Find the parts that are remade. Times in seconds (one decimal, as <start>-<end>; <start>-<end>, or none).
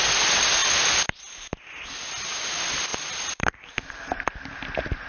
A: none